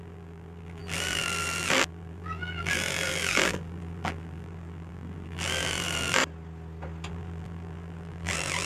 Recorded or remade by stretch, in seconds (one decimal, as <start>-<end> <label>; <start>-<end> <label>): 0.0-6.2 remade; 6.2-7.1 recorded; 7.1-8.7 remade